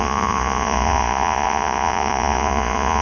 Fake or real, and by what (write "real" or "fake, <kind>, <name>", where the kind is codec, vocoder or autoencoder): fake, vocoder, Vocos